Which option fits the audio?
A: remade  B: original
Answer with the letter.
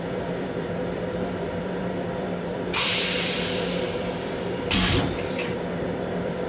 A